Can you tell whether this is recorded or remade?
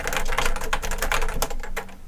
recorded